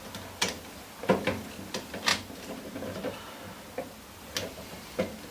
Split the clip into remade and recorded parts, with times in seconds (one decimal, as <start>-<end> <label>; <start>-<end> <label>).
0.0-5.3 recorded